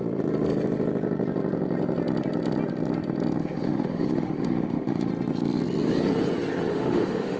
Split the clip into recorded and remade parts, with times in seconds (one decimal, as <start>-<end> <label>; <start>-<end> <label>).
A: 0.0-3.4 recorded; 3.4-5.1 remade; 5.1-6.7 recorded; 6.7-7.4 remade